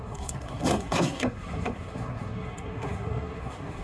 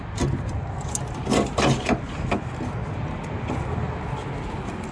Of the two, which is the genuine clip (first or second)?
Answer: second